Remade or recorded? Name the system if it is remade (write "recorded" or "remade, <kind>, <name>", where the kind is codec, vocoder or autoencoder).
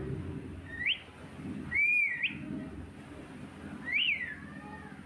recorded